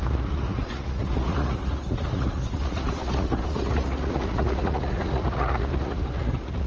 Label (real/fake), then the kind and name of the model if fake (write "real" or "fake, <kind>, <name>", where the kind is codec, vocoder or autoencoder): fake, vocoder, Vocos